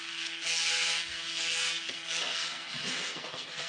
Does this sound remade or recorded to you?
remade